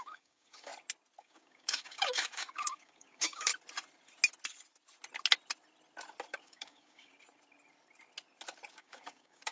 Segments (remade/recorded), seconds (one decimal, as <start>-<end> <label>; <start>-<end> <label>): 0.0-0.7 remade; 0.7-1.2 recorded; 1.2-3.5 remade; 3.5-6.3 recorded; 6.3-7.1 remade; 7.1-8.7 recorded; 8.7-9.5 remade